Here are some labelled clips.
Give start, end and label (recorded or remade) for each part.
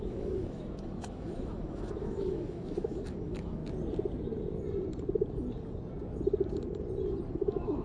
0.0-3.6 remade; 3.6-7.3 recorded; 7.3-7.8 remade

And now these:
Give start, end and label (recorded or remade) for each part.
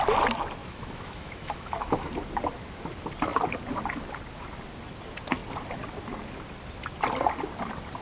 0.0-0.6 recorded; 0.6-2.1 remade; 2.1-8.0 recorded